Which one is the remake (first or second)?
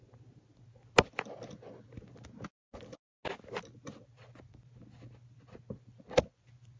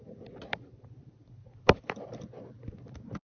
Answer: second